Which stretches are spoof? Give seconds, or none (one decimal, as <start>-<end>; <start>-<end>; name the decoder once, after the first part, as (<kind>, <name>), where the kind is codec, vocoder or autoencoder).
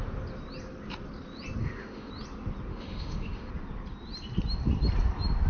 1.6-2.1 (autoencoder, DAC-VAE); 2.7-3.5